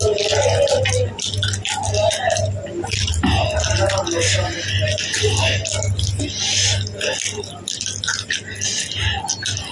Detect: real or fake real